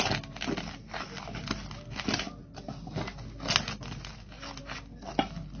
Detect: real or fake real